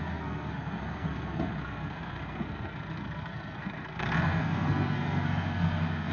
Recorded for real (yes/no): no